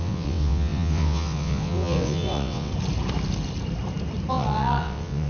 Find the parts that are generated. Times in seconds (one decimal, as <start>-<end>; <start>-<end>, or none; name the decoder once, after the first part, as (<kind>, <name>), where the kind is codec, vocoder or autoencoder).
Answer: 0.0-2.7 (vocoder, WaveNeXt); 4.3-5.3